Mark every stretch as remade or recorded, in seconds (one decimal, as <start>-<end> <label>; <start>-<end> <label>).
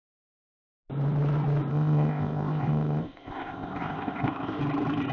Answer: 0.0-1.7 recorded; 1.7-4.6 remade; 4.6-5.1 recorded